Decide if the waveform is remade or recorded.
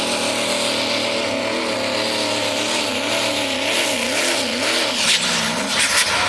recorded